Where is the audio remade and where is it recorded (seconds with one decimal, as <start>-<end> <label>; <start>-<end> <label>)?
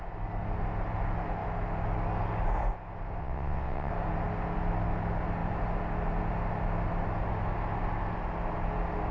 0.0-3.2 recorded; 3.2-3.9 remade; 3.9-9.1 recorded